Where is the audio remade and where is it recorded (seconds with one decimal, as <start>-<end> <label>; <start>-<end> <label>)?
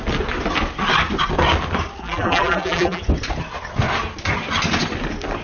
0.0-2.0 recorded; 2.0-3.0 remade; 3.0-5.4 recorded